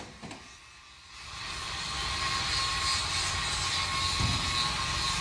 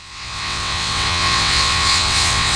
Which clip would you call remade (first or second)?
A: second